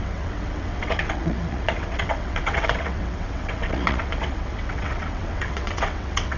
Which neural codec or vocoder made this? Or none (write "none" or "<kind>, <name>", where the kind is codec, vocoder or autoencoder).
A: vocoder, WaveNeXt